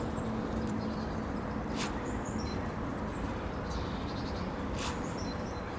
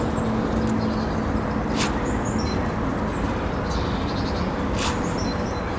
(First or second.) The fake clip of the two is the first